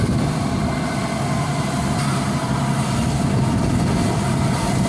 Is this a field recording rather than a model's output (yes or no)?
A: no